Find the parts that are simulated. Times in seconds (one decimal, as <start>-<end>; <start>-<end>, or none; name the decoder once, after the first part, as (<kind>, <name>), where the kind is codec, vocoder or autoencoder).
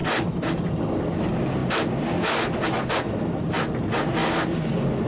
none